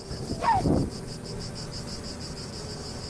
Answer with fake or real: real